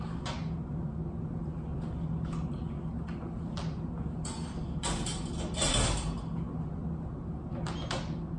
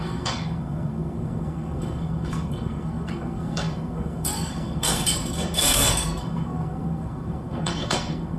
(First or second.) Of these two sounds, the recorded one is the first